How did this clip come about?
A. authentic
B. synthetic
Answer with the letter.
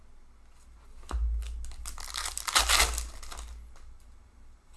A